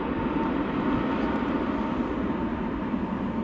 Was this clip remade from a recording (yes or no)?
no